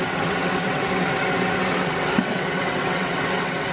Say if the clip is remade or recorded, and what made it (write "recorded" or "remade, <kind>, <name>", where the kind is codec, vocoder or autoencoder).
remade, vocoder, WaveNeXt